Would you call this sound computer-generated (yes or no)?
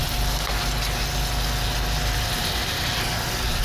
no